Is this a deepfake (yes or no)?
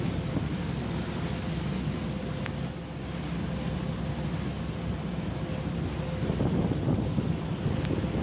no